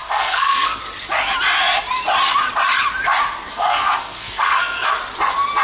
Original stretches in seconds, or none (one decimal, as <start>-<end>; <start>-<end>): 0.8-3.5; 5.0-5.6